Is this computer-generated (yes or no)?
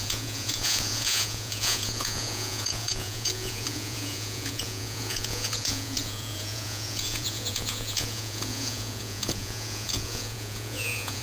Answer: yes